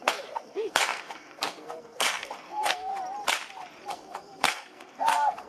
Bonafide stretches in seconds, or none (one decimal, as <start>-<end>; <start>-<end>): 2.9-3.9